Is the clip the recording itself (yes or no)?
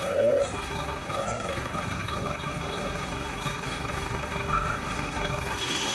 no